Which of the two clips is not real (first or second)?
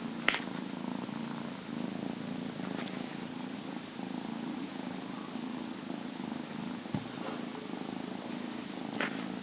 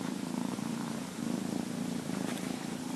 second